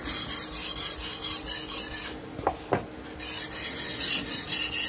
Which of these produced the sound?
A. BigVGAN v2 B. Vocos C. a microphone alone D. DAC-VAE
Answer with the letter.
C